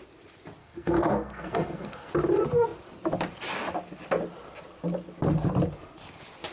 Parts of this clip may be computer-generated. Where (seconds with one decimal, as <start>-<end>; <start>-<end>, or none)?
0.6-2.1